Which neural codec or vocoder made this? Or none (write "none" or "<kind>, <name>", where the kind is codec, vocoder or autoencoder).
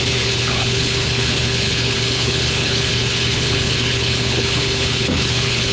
codec, HILCodec